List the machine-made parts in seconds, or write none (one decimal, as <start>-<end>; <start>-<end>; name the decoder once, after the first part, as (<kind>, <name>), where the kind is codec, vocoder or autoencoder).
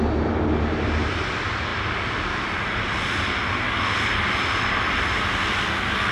none